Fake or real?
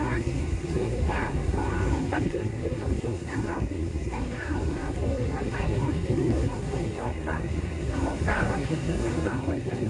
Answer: fake